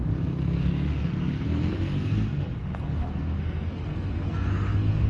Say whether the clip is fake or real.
fake